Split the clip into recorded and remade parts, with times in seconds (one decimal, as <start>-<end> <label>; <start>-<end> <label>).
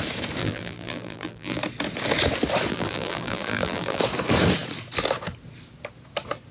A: 0.0-0.4 recorded; 0.4-1.6 remade; 1.6-2.7 recorded; 2.7-4.0 remade; 4.0-6.5 recorded